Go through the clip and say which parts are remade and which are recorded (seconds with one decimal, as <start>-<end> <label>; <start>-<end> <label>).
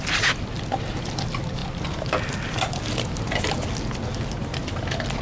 0.0-5.2 recorded